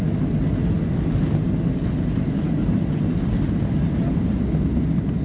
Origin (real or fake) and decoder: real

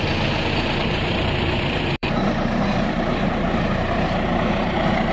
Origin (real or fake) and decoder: fake, vocoder, BigVGAN v2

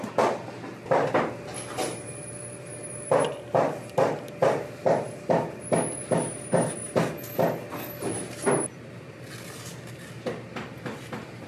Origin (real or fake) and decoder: real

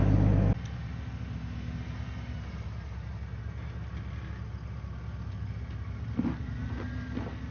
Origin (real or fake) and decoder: real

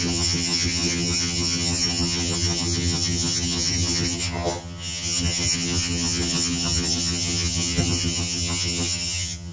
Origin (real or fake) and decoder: fake, vocoder, HiFi-GAN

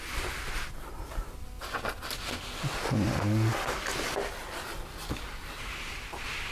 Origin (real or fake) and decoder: real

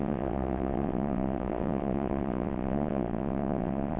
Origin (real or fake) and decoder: fake, vocoder, WaveNeXt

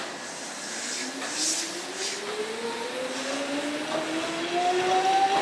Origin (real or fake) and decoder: real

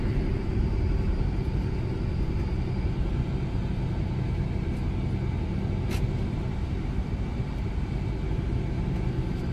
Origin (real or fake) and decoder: real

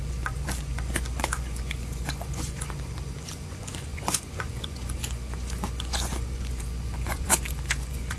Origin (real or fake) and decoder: fake, vocoder, Vocos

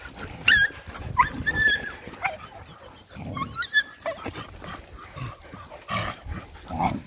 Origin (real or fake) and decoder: real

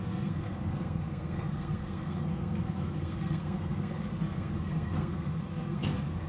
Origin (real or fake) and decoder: fake, codec, SNAC